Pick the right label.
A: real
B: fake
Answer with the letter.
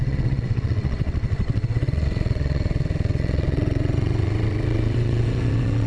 B